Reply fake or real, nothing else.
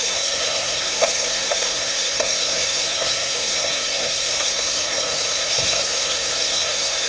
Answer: fake